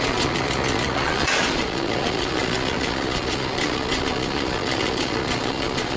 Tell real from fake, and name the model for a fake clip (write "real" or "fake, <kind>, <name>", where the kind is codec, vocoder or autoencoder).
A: fake, vocoder, Vocos